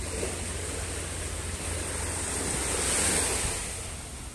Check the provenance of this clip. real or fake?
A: real